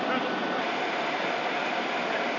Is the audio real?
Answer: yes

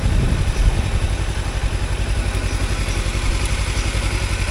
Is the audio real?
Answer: yes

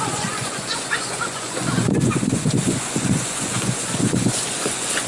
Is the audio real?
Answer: no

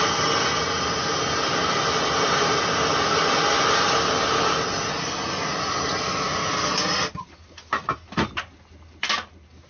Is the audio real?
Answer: yes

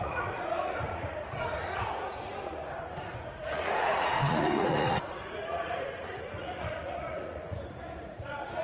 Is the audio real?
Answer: no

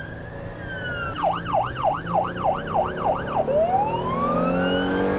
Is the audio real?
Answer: yes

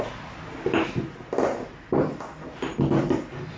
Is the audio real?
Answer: yes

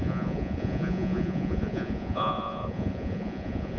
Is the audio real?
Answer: no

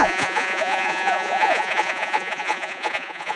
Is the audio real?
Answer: no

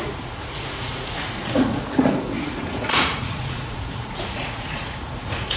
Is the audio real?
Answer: no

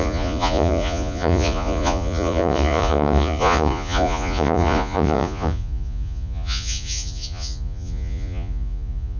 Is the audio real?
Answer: no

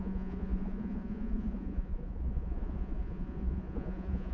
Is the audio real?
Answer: no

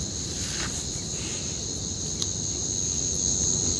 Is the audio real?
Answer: yes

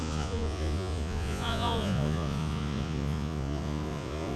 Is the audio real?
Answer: no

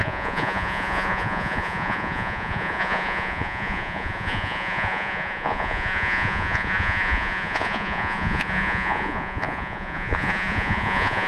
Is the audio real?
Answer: no